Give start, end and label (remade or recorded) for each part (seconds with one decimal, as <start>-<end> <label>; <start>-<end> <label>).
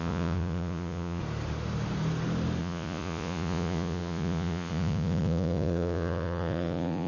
0.0-1.2 remade; 1.2-2.6 recorded; 2.6-7.1 remade